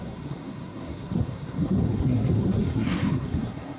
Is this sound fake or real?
fake